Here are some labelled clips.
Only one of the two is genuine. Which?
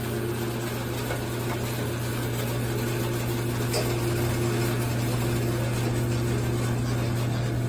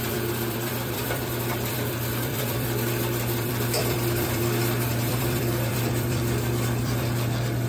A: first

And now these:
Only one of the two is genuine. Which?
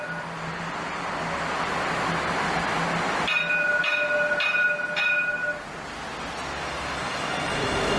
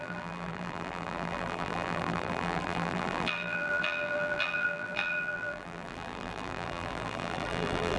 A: first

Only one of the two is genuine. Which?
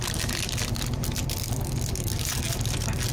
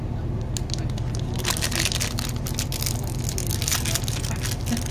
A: second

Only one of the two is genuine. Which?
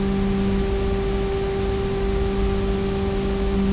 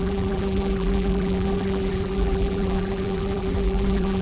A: first